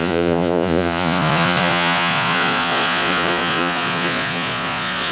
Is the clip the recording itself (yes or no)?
no